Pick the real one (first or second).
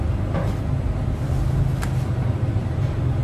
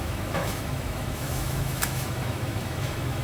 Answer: first